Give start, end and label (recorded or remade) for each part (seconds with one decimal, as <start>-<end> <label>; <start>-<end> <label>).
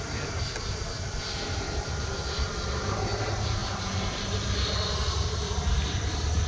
0.0-6.5 recorded